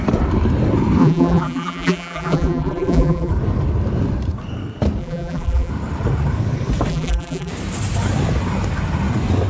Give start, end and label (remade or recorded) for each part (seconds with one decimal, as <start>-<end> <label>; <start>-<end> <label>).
0.0-1.0 recorded; 1.0-3.3 remade; 3.3-5.0 recorded; 5.0-5.7 remade; 5.7-6.9 recorded; 6.9-7.5 remade; 7.5-9.5 recorded